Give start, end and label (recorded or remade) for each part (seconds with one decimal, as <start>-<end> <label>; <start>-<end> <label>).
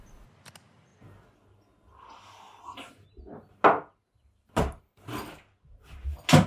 0.0-6.5 recorded